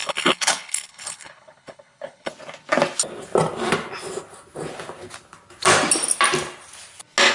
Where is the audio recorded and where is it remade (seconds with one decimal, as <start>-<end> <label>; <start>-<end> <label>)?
0.0-2.3 remade; 2.3-7.3 recorded